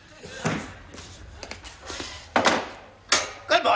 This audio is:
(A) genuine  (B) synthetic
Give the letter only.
A